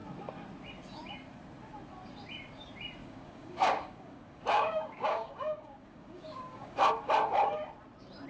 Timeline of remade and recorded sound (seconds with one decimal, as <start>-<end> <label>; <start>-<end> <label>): 0.0-3.0 recorded; 3.0-6.9 remade; 6.9-8.3 recorded